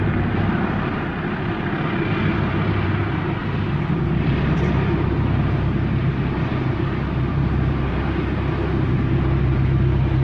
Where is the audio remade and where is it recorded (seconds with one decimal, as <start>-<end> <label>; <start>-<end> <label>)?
0.0-3.4 remade; 3.4-3.9 recorded; 3.9-10.2 remade